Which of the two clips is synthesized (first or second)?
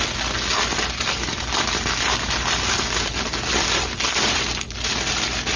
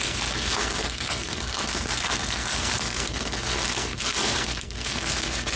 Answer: second